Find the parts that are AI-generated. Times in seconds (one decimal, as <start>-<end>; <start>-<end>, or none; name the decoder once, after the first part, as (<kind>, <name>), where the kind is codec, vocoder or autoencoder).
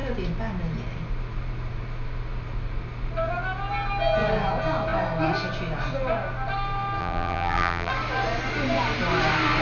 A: 7.0-7.9 (vocoder, BigVGAN v2)